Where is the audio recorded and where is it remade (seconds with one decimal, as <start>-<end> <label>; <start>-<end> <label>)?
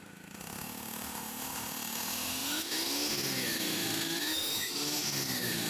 0.0-5.7 remade